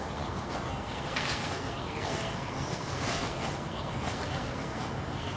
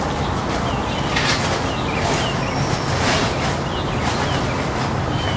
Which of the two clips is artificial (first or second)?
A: first